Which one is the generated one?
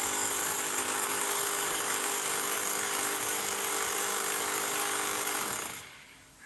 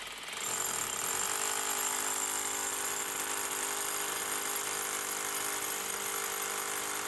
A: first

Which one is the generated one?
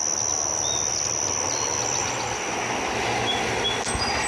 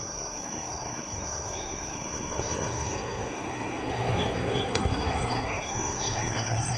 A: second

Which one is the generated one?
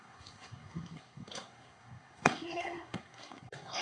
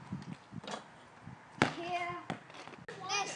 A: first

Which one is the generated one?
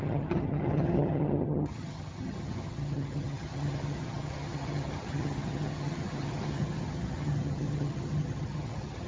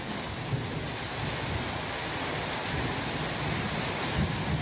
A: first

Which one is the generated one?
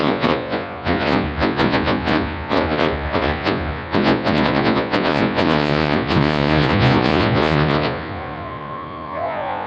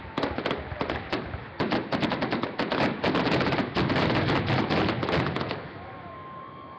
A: first